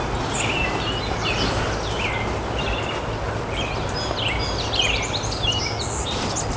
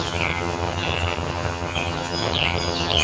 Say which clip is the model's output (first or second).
second